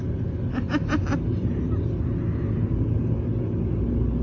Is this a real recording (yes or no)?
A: yes